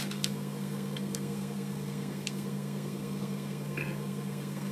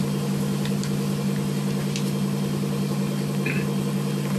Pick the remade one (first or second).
first